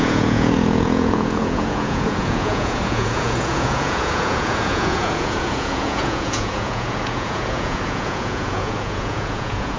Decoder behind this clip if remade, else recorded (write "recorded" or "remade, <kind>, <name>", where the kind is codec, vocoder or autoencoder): remade, vocoder, Vocos